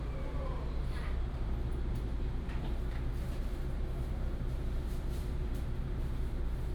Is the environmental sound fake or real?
fake